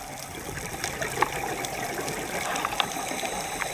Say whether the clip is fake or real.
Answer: real